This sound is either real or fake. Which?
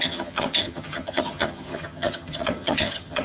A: fake